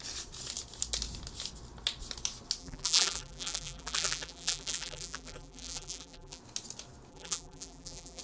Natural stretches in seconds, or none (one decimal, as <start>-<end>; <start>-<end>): 0.0-2.6; 6.4-7.1